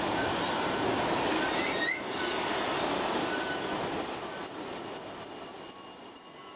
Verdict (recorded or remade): recorded